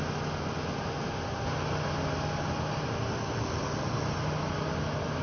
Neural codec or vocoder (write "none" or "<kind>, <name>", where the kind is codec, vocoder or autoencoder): none